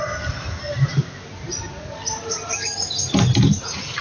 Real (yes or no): yes